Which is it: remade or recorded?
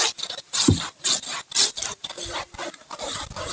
recorded